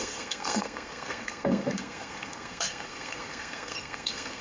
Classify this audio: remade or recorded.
remade